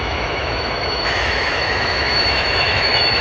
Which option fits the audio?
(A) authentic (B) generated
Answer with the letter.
B